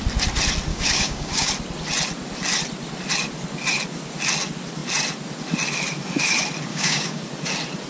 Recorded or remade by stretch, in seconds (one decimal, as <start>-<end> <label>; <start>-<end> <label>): 0.0-0.7 recorded; 0.7-1.5 remade; 1.5-6.7 recorded; 6.7-7.2 remade; 7.2-7.9 recorded